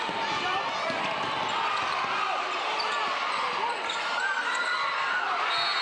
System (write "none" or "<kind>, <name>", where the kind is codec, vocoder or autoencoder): none